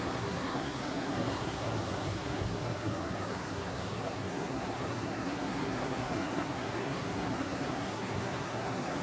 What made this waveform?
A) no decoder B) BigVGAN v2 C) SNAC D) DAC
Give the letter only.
C